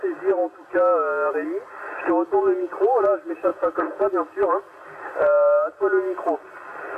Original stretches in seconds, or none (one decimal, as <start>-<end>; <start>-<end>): 0.0-3.5; 4.1-7.0